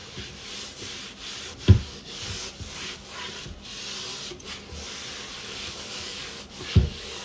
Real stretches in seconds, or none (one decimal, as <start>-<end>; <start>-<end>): 0.0-1.8; 2.4-5.4

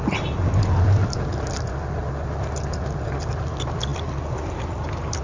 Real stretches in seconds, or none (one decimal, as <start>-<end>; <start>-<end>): 0.0-5.2

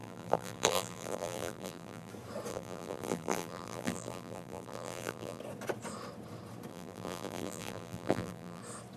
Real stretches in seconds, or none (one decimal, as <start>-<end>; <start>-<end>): 2.1-2.5; 5.4-6.7; 8.6-9.0

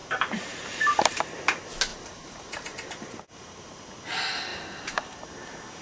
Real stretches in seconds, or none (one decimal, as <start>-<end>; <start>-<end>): 1.2-1.9; 3.8-4.5; 5.2-5.8

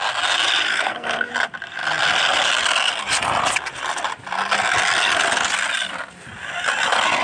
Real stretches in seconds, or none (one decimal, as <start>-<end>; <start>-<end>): 0.0-0.7; 1.3-7.2